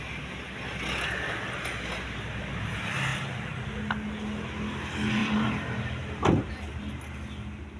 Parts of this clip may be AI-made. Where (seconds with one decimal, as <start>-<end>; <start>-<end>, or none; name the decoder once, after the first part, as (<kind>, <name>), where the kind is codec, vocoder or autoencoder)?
3.1-3.6 (vocoder, BigVGAN v2); 5.2-6.9